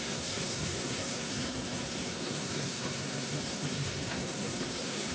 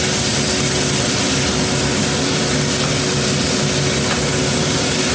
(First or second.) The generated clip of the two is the first